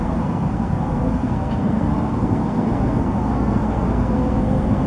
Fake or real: fake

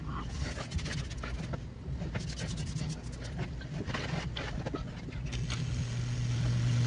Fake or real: real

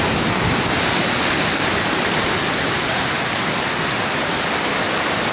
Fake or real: real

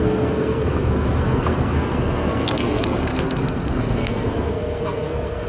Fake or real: fake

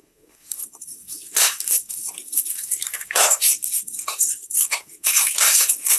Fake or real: fake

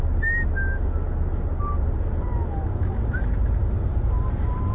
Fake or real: real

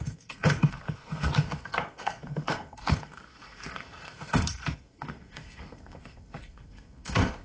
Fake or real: fake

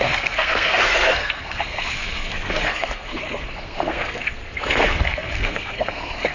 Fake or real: fake